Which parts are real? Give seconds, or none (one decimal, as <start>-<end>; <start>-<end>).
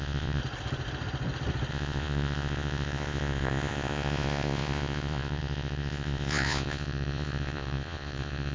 0.4-1.7